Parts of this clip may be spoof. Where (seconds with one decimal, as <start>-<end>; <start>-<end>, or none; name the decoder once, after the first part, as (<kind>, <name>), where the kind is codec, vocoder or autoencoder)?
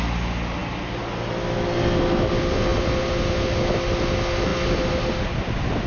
2.7-3.3 (vocoder, BigVGAN v2)